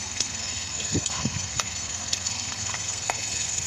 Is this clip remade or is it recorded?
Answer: remade